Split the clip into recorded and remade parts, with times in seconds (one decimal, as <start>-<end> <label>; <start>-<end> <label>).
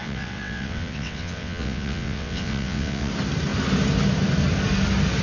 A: 0.0-3.1 remade; 3.1-5.2 recorded